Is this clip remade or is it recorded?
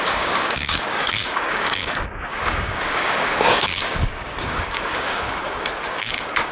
remade